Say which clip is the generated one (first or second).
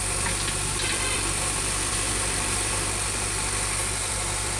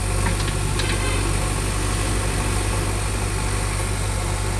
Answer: first